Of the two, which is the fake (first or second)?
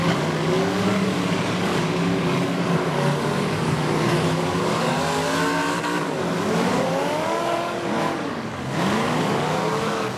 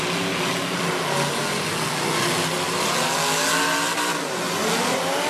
first